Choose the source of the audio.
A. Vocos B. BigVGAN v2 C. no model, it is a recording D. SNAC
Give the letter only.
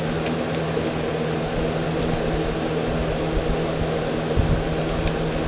C